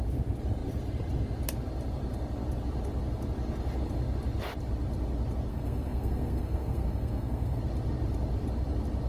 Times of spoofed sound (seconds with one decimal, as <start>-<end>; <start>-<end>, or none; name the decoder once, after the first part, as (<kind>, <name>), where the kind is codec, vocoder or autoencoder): 5.5-7.6 (codec, SNAC)